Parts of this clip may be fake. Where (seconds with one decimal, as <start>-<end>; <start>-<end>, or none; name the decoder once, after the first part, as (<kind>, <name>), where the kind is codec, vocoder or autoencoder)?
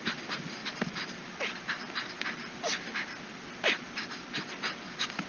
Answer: none